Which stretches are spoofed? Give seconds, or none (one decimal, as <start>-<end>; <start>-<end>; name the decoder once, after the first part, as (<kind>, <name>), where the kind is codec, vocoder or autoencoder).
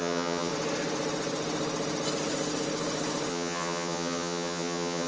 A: 0.0-0.5 (vocoder, HiFi-GAN); 3.3-5.1